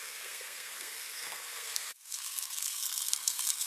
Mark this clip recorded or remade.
remade